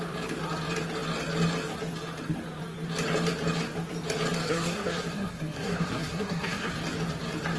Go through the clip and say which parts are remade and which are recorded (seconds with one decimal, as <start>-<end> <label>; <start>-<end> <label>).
0.0-4.4 recorded; 4.4-6.7 remade; 6.7-7.6 recorded